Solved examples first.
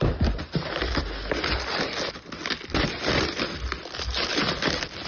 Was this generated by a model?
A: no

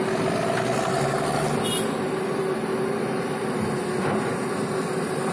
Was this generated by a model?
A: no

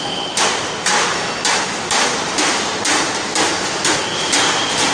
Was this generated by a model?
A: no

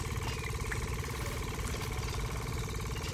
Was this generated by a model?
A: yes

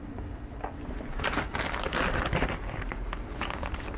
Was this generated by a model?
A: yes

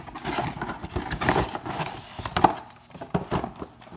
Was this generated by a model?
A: no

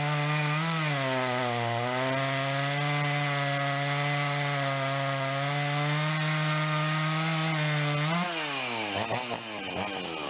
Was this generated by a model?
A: no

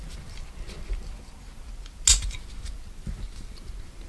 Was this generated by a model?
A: no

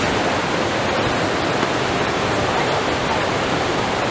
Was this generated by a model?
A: no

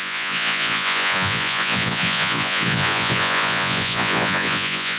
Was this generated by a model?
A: yes